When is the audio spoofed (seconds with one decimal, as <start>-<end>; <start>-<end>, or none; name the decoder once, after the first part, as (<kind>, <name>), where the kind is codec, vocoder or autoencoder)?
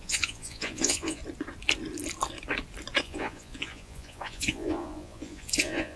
0.0-1.2 (vocoder, Vocos); 3.0-6.0